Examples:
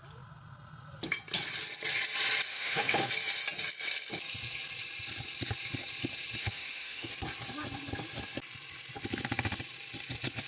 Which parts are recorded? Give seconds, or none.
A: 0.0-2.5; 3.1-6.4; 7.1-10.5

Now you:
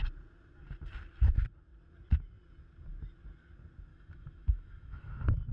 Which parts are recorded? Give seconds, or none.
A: 0.0-3.9; 5.1-5.5

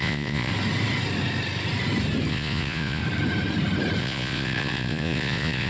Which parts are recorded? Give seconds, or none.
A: 0.5-2.3; 3.0-4.0

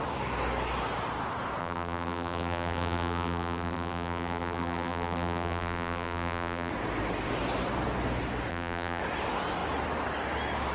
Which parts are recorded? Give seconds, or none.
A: 0.0-1.6; 6.7-8.5; 9.0-10.7

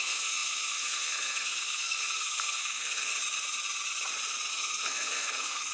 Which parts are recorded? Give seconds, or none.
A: 3.1-4.5

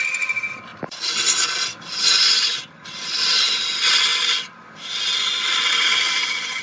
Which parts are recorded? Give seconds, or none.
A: 0.0-0.7; 2.0-6.6